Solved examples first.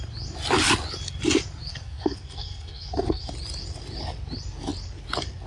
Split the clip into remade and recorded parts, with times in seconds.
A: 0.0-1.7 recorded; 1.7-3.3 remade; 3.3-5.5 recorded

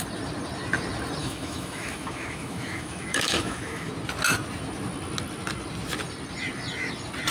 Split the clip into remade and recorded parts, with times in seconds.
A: 0.0-1.2 recorded; 1.2-3.9 remade; 3.9-7.3 recorded

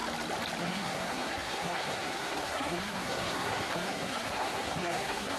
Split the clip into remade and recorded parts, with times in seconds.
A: 0.0-0.6 recorded; 0.6-5.4 remade

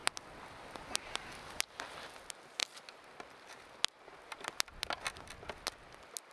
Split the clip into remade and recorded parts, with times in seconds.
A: 0.0-6.3 recorded